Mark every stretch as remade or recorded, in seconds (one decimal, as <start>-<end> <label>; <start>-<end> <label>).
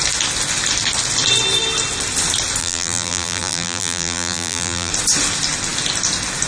0.0-2.6 recorded; 2.6-4.9 remade; 4.9-6.5 recorded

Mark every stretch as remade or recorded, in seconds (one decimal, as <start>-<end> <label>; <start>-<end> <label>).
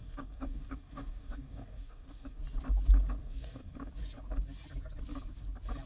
0.0-2.4 remade; 2.4-3.2 recorded; 3.2-3.9 remade; 3.9-5.9 recorded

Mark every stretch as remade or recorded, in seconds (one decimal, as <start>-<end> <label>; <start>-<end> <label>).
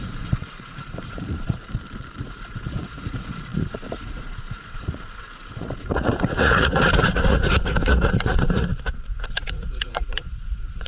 0.0-1.6 remade; 1.6-2.2 recorded; 2.2-8.7 remade; 8.7-9.2 recorded; 9.2-10.9 remade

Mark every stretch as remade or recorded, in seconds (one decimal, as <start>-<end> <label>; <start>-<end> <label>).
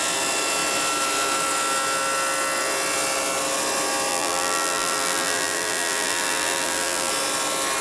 0.0-4.1 recorded; 4.1-7.1 remade; 7.1-7.8 recorded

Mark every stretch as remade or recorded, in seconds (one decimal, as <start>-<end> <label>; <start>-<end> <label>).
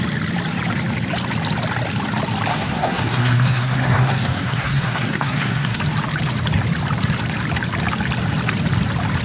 0.0-2.5 recorded; 2.5-5.8 remade; 5.8-9.2 recorded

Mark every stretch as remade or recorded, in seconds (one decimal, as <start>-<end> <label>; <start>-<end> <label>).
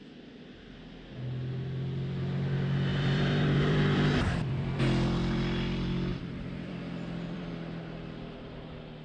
0.0-2.9 recorded; 2.9-4.8 remade; 4.8-6.1 recorded; 6.1-7.5 remade; 7.5-9.0 recorded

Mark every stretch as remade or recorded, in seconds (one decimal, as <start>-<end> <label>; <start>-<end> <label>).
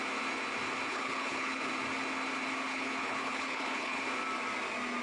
0.0-0.9 recorded; 0.9-1.7 remade; 1.7-2.7 recorded; 2.7-4.0 remade; 4.0-5.0 recorded